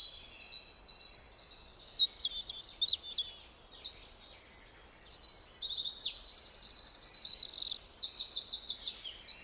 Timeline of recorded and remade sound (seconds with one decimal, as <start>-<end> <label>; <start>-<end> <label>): 0.0-9.4 recorded

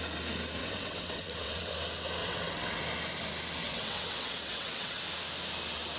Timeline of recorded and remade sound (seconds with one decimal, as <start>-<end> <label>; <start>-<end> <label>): 0.0-0.6 recorded; 0.6-1.7 remade; 1.7-2.2 recorded; 2.2-2.8 remade; 2.8-3.6 recorded; 3.6-5.0 remade; 5.0-6.0 recorded

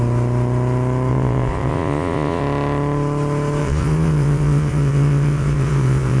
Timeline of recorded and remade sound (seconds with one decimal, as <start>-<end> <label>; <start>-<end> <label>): 0.0-1.1 recorded; 1.1-2.4 remade; 2.4-3.6 recorded; 3.6-6.2 remade

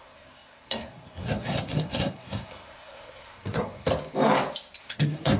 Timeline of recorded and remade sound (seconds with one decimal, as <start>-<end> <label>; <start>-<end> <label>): 0.0-3.9 remade; 3.9-4.8 recorded; 4.8-5.4 remade